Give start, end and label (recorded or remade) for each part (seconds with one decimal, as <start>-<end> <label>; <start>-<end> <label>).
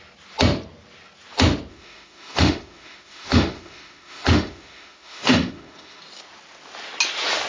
0.0-1.7 recorded; 1.7-6.0 remade; 6.0-7.5 recorded